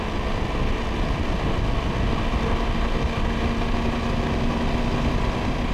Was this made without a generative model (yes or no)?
yes